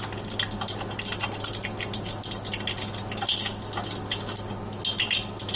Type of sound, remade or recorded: recorded